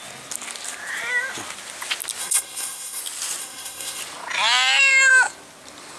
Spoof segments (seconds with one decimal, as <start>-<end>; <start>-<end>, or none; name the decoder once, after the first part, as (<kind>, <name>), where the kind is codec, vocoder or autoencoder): 2.2-3.0 (codec, SNAC); 3.4-4.0